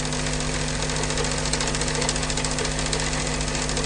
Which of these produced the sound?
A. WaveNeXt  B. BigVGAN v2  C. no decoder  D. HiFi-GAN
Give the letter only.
C